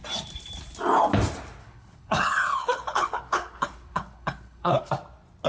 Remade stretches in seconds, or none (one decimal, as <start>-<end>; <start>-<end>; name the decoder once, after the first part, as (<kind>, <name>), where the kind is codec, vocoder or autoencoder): 1.6-4.9 (codec, HILCodec)